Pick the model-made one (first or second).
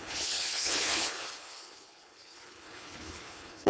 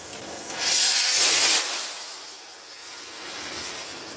first